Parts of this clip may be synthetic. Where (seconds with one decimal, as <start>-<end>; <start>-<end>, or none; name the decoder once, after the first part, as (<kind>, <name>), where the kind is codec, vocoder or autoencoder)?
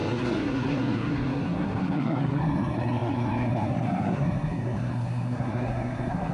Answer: 0.0-6.3 (codec, SNAC)